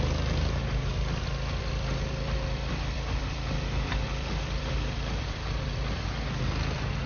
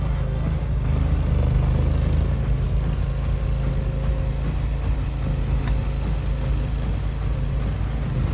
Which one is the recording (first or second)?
second